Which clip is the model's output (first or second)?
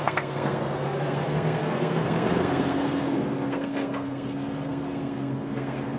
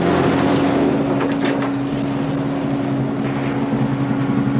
first